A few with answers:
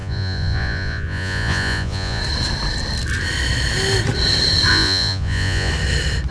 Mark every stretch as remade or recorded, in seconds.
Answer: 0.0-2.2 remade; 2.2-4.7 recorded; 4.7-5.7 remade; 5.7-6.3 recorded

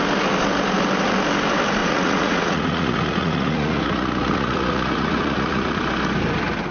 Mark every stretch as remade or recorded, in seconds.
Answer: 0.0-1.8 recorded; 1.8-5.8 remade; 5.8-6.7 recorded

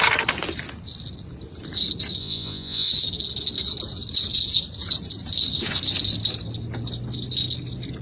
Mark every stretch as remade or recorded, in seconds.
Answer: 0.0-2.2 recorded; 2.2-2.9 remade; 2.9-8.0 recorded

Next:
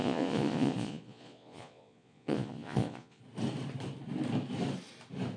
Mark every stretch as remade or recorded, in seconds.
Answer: 0.0-3.2 remade; 3.2-5.4 recorded

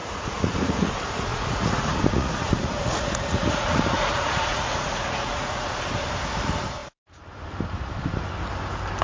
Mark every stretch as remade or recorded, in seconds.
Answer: 0.0-0.9 remade; 0.9-1.3 recorded; 1.3-5.8 remade; 5.8-9.0 recorded

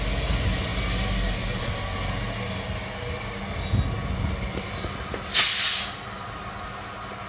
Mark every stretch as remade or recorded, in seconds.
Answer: 0.0-7.3 recorded